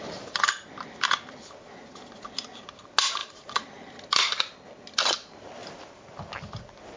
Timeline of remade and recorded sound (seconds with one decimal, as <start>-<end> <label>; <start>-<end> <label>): 0.0-3.2 recorded; 3.2-4.0 remade; 4.0-5.6 recorded; 5.6-6.1 remade; 6.1-7.0 recorded